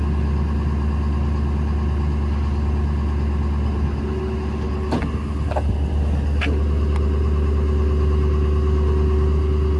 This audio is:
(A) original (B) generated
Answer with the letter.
A